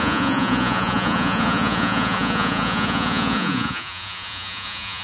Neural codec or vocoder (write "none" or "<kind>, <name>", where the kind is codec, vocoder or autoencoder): vocoder, Vocos